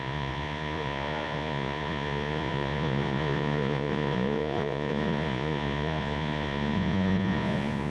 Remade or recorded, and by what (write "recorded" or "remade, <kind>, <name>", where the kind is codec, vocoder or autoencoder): remade, vocoder, Vocos